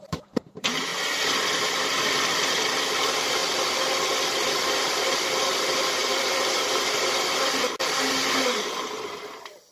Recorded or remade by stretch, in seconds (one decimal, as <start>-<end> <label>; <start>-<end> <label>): 0.0-0.9 remade; 0.9-1.5 recorded; 1.5-3.4 remade; 3.4-4.5 recorded; 4.5-9.7 remade